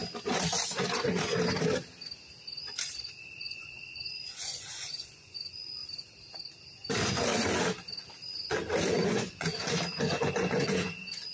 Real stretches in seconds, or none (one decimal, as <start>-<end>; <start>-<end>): 0.0-3.4; 5.8-8.9; 9.5-10.0